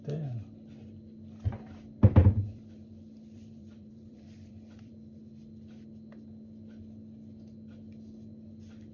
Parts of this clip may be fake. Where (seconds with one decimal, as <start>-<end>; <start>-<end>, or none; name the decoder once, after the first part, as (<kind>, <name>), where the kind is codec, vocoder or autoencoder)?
2.2-4.9 (vocoder, BigVGAN v2)